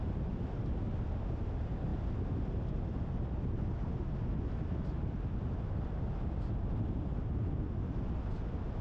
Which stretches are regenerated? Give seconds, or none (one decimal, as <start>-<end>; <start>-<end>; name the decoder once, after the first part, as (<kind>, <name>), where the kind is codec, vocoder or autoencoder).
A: none